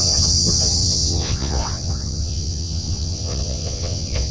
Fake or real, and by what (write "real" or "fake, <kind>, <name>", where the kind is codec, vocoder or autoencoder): fake, vocoder, WaveNeXt